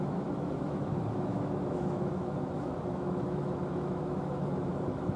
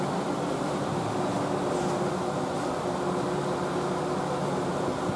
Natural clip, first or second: second